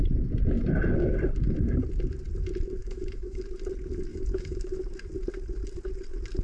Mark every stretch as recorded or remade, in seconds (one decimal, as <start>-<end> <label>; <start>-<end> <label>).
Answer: 0.0-2.8 recorded; 2.8-3.4 remade; 3.4-4.1 recorded; 4.1-4.8 remade; 4.8-6.4 recorded